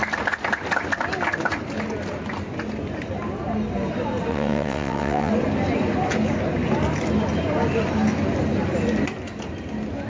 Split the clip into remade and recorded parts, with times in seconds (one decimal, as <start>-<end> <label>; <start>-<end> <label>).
0.0-4.3 recorded; 4.3-5.3 remade; 5.3-10.1 recorded